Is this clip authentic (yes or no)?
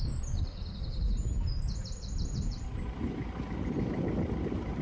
yes